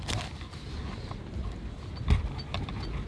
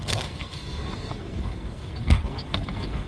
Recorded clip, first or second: first